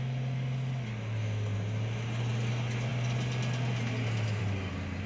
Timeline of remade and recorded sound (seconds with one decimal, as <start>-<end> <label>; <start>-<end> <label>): 0.0-5.1 recorded

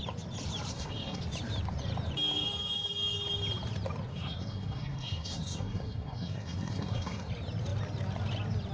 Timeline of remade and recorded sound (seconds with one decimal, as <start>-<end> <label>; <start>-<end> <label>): 0.0-0.7 recorded; 0.7-1.2 remade; 1.2-4.1 recorded; 4.1-7.3 remade; 7.3-8.7 recorded

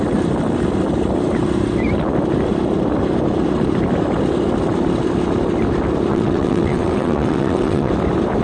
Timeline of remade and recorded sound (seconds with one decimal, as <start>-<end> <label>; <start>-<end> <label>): 0.0-6.1 recorded; 6.1-7.9 remade; 7.9-8.4 recorded

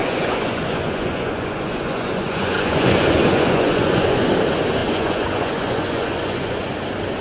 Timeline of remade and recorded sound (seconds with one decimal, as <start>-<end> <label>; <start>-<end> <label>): 0.0-4.3 remade; 4.3-4.8 recorded; 4.8-6.7 remade; 6.7-7.2 recorded

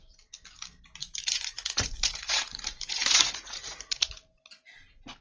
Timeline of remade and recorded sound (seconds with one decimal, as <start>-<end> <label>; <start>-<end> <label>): 0.0-1.0 recorded; 1.0-4.1 remade; 4.1-5.2 recorded

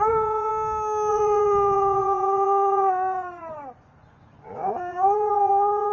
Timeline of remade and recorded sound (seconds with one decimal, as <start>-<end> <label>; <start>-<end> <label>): 0.0-0.5 remade; 0.5-1.1 recorded; 1.1-5.9 remade

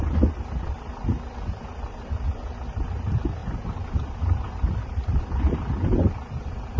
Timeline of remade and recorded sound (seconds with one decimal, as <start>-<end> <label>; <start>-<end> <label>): 0.0-3.4 recorded; 3.4-5.3 remade; 5.3-6.8 recorded

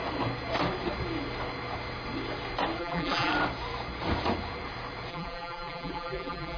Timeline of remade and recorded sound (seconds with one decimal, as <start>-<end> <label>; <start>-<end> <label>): 0.0-2.8 recorded; 2.8-3.3 remade; 3.3-5.1 recorded; 5.1-6.6 remade